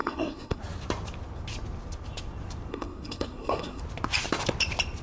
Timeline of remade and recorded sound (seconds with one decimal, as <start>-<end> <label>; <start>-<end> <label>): 0.0-0.6 remade; 0.6-2.7 recorded; 2.7-3.8 remade; 3.8-5.0 recorded